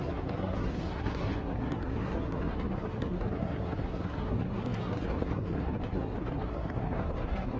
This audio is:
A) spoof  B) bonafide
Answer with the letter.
A